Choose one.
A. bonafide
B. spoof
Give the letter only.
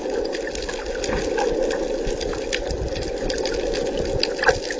A